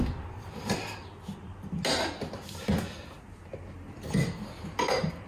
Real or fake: real